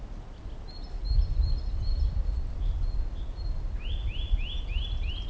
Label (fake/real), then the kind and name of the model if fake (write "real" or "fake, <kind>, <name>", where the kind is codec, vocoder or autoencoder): real